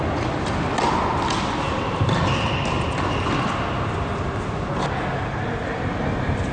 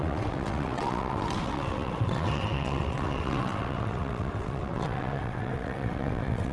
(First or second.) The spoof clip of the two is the second